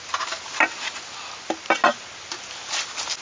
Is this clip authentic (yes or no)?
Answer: yes